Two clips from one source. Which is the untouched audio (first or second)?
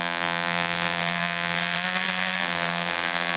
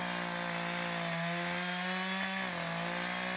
second